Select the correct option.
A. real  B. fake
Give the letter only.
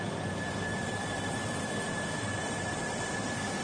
B